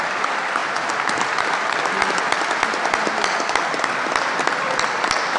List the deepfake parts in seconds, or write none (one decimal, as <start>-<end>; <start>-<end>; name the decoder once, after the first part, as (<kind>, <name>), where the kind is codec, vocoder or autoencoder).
none